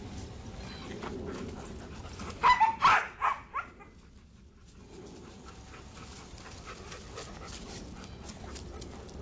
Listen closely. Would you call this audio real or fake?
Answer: real